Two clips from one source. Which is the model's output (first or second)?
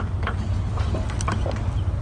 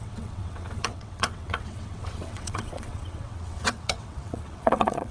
second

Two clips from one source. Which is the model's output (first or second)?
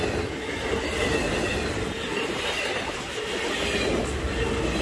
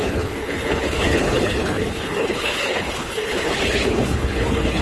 second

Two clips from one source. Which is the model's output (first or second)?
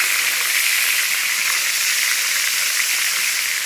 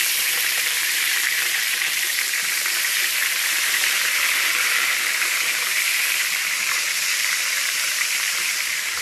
second